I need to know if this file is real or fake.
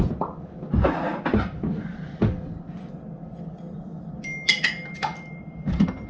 real